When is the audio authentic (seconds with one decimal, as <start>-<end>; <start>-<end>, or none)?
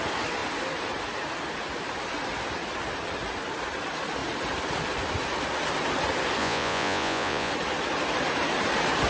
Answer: 0.0-6.4; 7.5-9.1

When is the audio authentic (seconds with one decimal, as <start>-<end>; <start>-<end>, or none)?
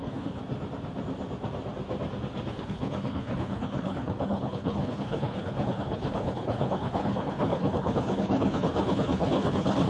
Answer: 0.4-2.5